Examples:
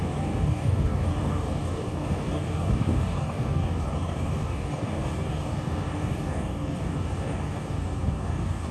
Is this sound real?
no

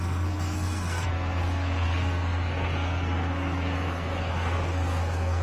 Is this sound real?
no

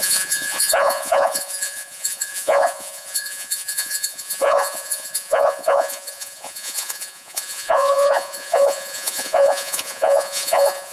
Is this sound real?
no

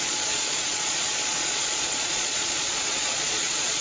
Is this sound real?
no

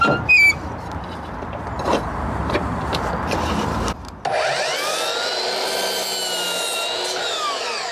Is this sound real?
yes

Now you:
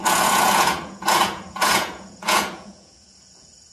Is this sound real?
no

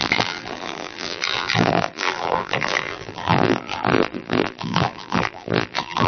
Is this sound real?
no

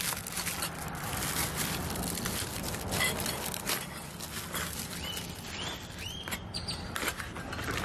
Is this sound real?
yes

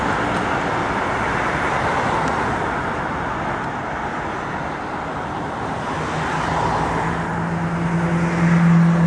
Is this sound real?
yes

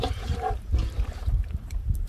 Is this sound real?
no